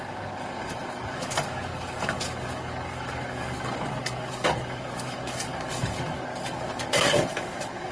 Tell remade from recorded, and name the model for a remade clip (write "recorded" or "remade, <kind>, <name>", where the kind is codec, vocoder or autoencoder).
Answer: remade, codec, DAC